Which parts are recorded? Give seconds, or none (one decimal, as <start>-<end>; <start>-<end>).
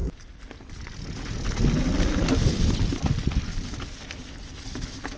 0.0-3.5; 4.1-5.2